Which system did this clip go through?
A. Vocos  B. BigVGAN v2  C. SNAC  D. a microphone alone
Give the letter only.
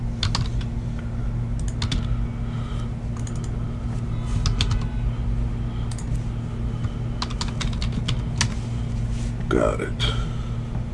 D